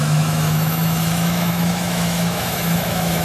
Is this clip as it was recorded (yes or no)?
no